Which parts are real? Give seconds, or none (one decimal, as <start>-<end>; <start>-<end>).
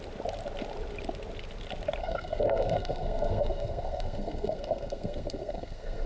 0.0-2.0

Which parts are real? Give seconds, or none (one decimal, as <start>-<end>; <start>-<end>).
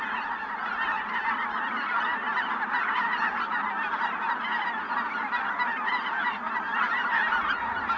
0.0-8.0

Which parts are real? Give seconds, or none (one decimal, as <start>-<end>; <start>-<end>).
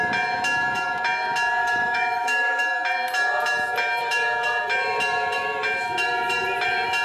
0.0-1.6; 2.6-7.0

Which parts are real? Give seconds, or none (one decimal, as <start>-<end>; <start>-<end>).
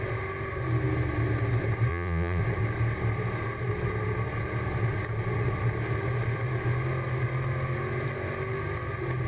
0.0-1.9; 2.4-9.3